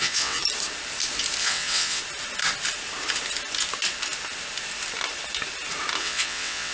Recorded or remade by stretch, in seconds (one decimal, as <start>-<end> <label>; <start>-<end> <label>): 0.0-0.4 remade; 0.4-1.4 recorded; 1.4-2.0 remade; 2.0-6.0 recorded; 6.0-6.7 remade